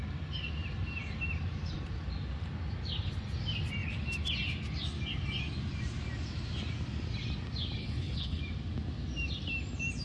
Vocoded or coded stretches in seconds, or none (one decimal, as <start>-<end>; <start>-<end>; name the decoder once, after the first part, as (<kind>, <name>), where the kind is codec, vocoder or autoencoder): 7.8-8.4 (codec, HILCodec)